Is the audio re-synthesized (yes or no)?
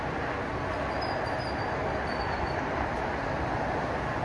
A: no